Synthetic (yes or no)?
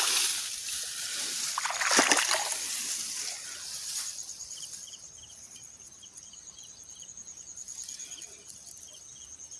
no